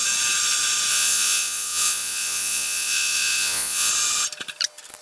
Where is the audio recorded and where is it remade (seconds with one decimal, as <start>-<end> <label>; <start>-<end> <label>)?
0.0-0.9 recorded; 0.9-3.9 remade; 3.9-5.0 recorded